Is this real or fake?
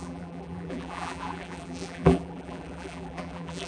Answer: fake